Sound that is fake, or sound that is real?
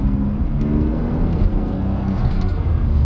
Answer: fake